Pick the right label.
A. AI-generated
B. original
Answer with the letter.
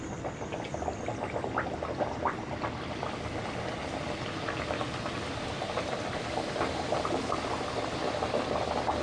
B